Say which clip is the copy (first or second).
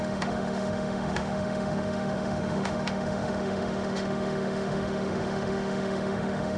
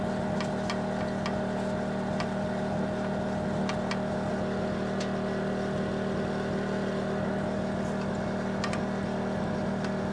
first